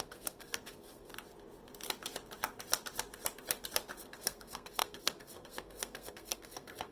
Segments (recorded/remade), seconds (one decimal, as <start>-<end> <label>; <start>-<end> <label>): 0.0-1.1 remade; 1.1-4.0 recorded; 4.0-6.9 remade